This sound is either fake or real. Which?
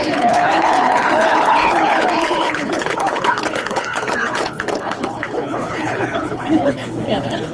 fake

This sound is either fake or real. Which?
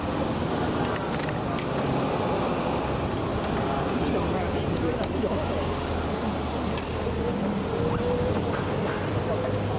real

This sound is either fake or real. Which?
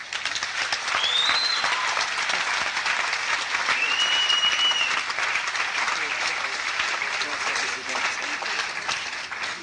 real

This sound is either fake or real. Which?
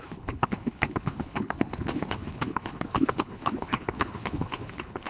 fake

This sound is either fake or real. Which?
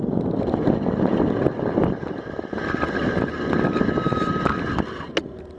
real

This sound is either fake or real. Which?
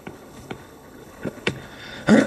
fake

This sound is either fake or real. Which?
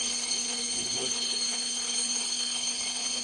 fake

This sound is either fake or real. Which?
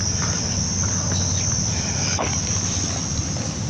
real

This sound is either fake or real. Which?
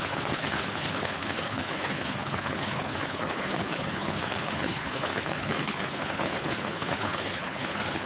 fake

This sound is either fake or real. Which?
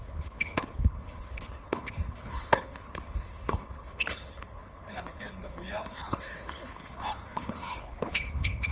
fake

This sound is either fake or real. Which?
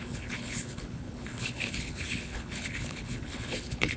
fake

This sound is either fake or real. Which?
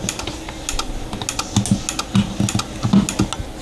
real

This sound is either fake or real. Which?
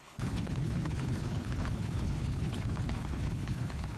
fake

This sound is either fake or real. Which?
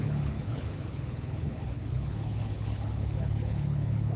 fake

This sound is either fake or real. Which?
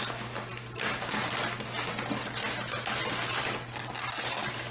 real